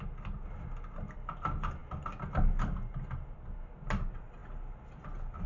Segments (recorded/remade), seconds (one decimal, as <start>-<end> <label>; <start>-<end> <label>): 0.0-5.5 recorded